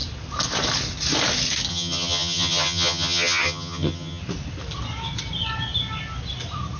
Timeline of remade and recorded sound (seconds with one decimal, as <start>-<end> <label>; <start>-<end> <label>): 0.0-1.7 recorded; 1.7-4.2 remade; 4.2-6.8 recorded